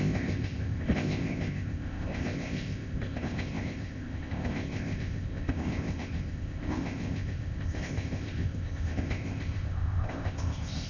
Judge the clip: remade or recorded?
remade